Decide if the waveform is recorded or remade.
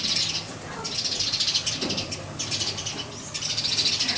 recorded